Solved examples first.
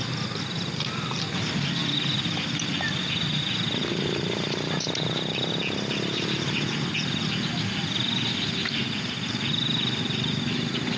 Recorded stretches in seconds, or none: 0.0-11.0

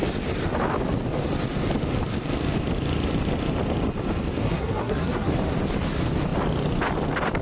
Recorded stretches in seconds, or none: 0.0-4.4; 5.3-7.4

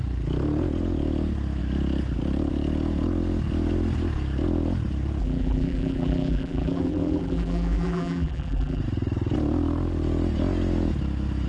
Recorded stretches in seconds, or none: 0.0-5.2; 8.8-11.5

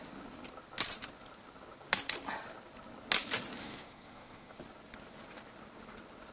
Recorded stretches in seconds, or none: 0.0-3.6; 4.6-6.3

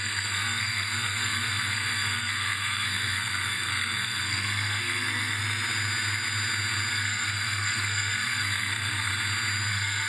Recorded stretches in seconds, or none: 5.4-6.9; 9.1-9.7

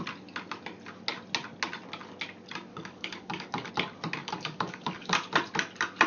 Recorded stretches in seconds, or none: 0.0-2.7; 3.7-4.2; 5.1-6.1

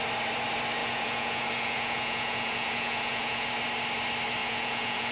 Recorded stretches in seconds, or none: 0.0-0.8; 3.5-4.4